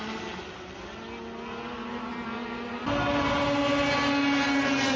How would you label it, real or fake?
real